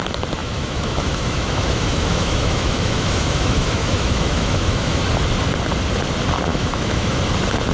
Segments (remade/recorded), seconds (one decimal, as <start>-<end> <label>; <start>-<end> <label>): 0.0-0.4 recorded; 0.4-5.0 remade; 5.0-6.5 recorded; 6.5-7.2 remade; 7.2-7.7 recorded